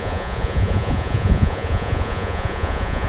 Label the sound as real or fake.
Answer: fake